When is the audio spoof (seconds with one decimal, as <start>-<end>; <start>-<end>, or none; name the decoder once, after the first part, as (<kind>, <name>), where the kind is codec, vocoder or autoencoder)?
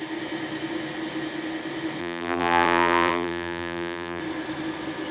2.0-4.2 (vocoder, BigVGAN v2)